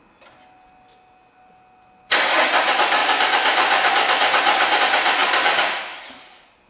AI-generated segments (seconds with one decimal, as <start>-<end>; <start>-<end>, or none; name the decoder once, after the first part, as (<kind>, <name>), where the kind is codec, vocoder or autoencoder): 3.0-4.8 (vocoder, BigVGAN v2); 5.2-6.1